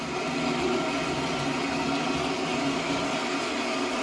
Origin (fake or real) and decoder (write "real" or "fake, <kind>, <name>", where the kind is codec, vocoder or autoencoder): real